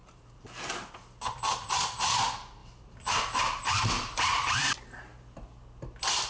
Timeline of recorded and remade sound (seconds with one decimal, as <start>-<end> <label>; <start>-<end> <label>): 0.0-1.5 remade; 1.5-2.6 recorded; 2.6-5.0 remade; 5.0-6.3 recorded